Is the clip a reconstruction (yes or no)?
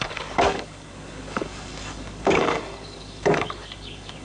yes